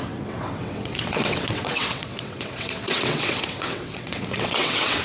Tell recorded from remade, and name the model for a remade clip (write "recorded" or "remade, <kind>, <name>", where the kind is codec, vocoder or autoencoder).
remade, vocoder, WaveNeXt